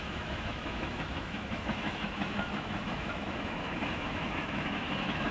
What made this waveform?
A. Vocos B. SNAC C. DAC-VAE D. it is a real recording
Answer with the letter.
C